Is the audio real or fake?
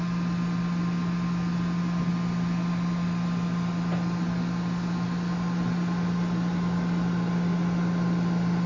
real